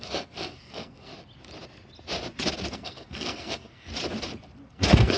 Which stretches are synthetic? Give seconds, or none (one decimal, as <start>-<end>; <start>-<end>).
0.0-1.1; 2.7-3.9; 4.7-5.2